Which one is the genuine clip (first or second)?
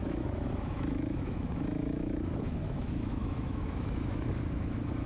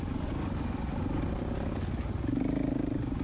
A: second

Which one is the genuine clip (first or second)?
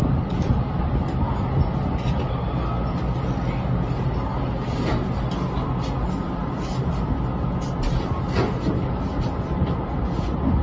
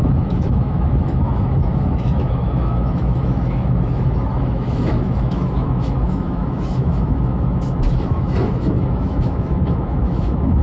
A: first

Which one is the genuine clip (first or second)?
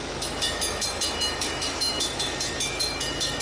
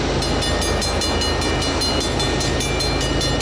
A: second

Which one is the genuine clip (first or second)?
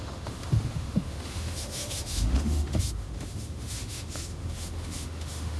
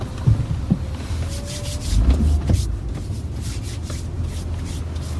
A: second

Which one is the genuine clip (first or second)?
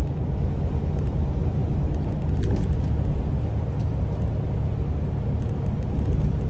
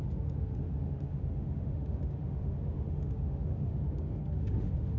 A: first